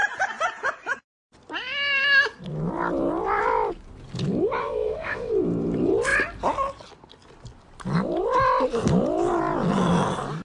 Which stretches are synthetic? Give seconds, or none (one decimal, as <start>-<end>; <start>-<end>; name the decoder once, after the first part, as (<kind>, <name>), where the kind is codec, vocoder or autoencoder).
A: 4.6-5.3 (autoencoder, DAC-VAE)